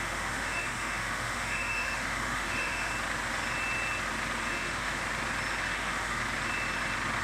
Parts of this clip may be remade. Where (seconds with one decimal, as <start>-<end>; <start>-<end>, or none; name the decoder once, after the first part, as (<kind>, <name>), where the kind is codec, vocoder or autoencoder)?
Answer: 0.0-2.9 (autoencoder, DAC-VAE); 4.5-5.0; 5.6-6.2